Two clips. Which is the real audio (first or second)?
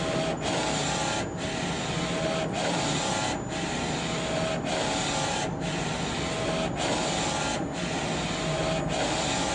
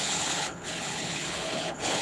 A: first